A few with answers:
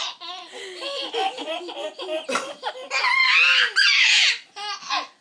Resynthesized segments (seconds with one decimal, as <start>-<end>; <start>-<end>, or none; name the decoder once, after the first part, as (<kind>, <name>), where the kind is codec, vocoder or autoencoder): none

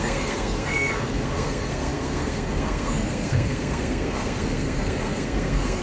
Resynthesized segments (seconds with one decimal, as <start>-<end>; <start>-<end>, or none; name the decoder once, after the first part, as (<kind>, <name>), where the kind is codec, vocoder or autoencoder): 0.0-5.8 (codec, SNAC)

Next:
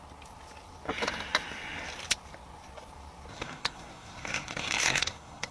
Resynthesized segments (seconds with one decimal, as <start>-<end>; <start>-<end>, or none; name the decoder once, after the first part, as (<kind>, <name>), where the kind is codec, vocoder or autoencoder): 3.3-5.5 (codec, SNAC)

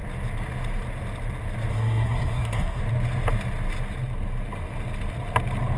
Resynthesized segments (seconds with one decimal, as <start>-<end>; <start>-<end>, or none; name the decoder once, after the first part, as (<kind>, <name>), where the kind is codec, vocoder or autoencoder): 1.7-2.8 (codec, SNAC)

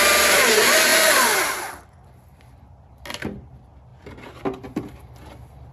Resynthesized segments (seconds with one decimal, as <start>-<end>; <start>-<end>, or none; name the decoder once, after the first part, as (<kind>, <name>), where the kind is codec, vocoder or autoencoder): none

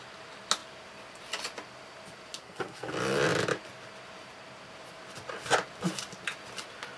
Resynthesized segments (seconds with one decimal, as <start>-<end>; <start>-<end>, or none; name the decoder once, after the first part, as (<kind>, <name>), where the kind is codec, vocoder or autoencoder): 2.4-2.9 (codec, SNAC)